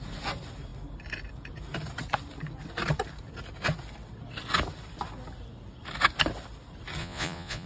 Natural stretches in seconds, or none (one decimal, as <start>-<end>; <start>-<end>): 0.0-7.0

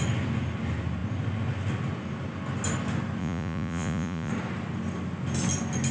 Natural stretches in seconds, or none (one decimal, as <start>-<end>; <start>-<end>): 0.0-3.2; 4.3-5.9

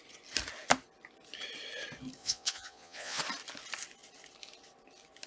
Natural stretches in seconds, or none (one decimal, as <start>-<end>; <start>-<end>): 0.0-2.2; 3.2-5.3

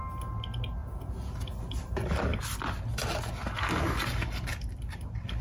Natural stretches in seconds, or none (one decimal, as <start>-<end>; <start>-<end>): 0.0-0.8; 1.3-5.4

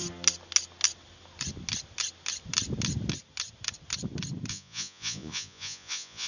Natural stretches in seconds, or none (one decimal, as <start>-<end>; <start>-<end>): 0.0-4.5